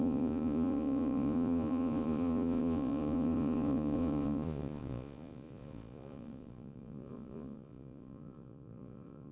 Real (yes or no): no